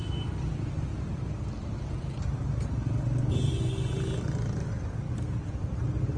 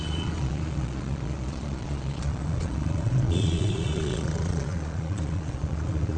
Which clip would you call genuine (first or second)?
first